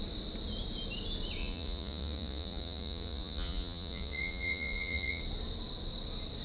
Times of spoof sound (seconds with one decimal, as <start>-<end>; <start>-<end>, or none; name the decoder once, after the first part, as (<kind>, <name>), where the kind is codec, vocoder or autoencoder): 1.4-5.2 (vocoder, Vocos)